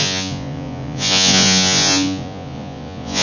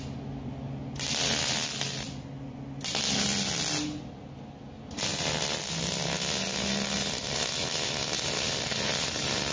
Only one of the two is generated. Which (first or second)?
first